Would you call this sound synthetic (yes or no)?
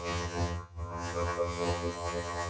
yes